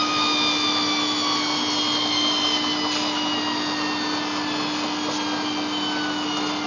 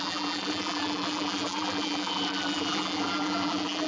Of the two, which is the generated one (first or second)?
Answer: second